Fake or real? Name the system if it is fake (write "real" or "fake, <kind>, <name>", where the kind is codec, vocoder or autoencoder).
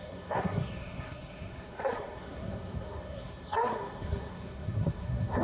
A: fake, codec, SNAC